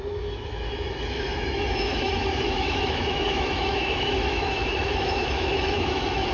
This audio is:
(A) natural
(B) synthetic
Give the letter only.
B